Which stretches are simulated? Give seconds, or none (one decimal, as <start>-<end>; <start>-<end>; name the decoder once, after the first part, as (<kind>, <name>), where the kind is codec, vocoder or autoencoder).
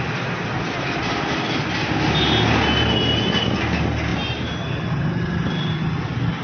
none